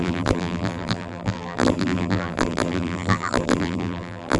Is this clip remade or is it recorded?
remade